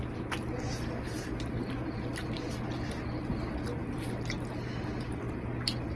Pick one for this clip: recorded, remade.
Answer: recorded